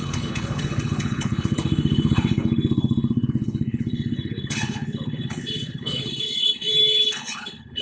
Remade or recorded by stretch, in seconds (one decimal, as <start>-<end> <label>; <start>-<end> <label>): 0.0-7.8 remade

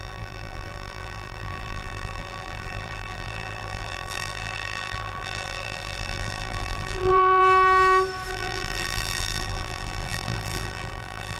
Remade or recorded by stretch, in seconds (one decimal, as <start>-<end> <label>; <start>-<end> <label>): 0.0-7.4 remade; 7.4-8.3 recorded; 8.3-11.4 remade

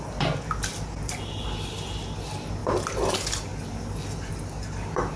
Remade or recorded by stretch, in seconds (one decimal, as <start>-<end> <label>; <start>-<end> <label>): 0.0-5.2 recorded

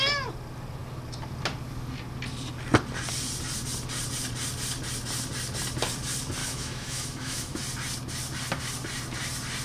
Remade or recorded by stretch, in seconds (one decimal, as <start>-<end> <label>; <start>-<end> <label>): 0.0-6.4 recorded; 6.4-7.6 remade; 7.6-9.6 recorded